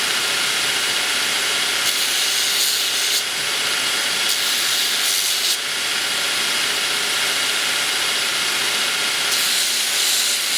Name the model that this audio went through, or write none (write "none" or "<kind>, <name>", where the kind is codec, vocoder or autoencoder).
none